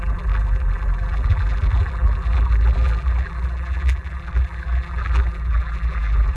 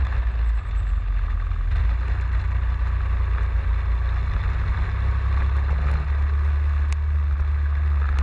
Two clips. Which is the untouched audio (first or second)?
second